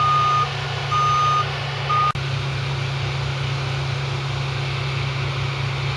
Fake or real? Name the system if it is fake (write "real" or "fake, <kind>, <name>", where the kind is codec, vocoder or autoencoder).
real